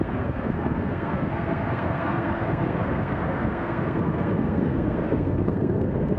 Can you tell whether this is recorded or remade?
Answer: remade